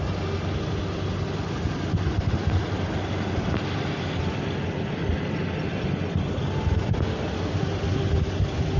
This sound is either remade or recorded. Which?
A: recorded